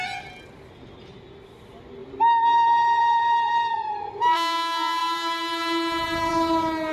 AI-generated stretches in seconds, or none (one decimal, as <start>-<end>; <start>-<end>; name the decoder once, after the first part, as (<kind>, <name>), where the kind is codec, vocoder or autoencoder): 5.0-6.3 (vocoder, BigVGAN v2)